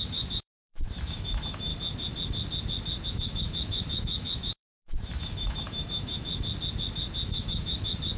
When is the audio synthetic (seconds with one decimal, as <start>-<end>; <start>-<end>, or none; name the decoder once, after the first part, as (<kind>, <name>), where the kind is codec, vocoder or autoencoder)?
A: 0.0-1.7 (autoencoder, DAC-VAE); 3.1-6.3; 7.3-8.2